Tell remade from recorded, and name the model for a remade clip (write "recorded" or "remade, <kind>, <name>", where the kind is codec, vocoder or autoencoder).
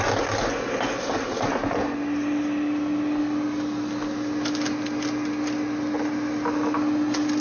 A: recorded